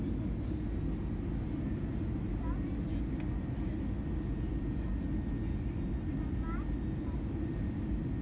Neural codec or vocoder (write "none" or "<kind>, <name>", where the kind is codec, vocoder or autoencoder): none